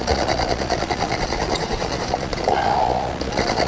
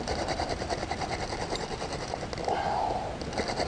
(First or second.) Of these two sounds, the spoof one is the first